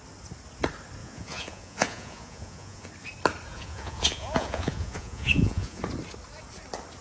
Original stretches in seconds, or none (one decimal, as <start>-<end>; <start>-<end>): 0.0-1.0; 2.9-3.5; 5.8-7.0

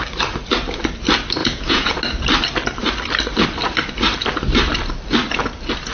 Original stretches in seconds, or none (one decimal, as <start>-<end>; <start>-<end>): 0.0-1.4; 2.0-5.9

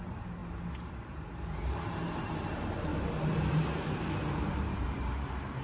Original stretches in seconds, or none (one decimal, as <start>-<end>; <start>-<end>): 0.4-0.9; 2.9-3.5

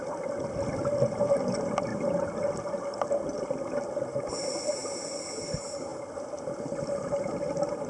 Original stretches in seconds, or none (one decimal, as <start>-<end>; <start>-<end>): 0.0-7.9

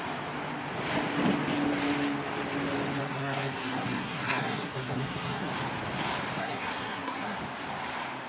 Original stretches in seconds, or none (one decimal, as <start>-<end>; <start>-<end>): 0.0-3.0; 5.5-6.4; 7.4-8.3

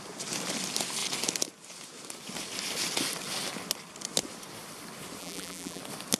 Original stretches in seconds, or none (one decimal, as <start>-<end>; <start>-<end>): 0.0-5.2; 5.8-6.2